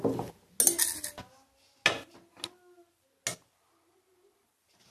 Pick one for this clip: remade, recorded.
recorded